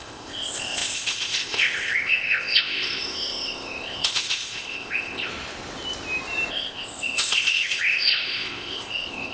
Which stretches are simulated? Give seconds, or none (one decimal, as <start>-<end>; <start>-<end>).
0.0-5.3; 6.5-9.3